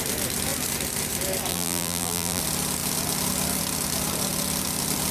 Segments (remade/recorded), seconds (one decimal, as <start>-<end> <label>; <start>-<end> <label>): 0.0-1.5 recorded; 1.5-2.4 remade; 2.4-5.1 recorded